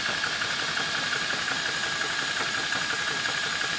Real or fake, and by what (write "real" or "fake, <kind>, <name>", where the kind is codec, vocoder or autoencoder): real